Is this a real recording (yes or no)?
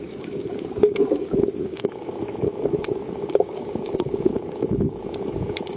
no